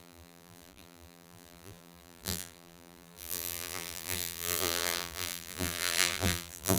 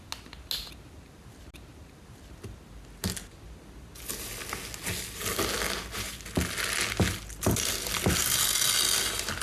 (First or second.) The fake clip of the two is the first